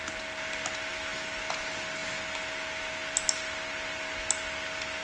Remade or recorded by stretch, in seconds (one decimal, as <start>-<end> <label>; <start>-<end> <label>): 0.0-0.9 recorded; 0.9-1.4 remade; 1.4-5.0 recorded